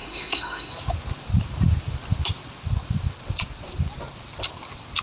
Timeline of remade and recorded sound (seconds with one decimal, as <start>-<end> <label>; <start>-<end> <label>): 0.0-0.7 remade; 0.7-5.0 recorded